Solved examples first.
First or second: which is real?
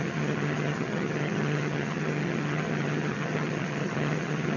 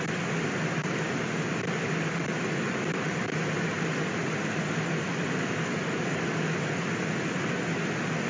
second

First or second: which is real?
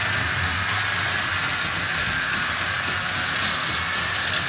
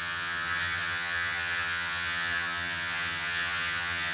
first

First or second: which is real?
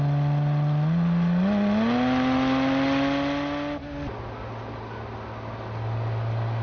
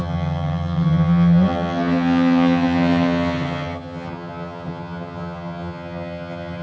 first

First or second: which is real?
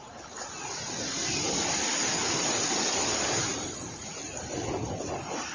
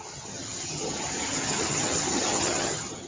first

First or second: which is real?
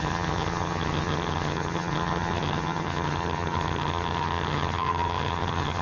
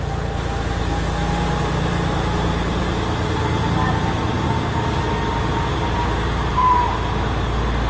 second